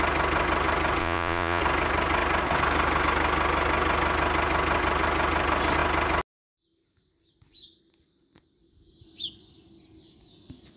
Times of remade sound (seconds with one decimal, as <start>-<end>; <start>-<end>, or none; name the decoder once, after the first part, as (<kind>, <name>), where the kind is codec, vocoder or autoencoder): 1.0-1.6 (vocoder, Vocos)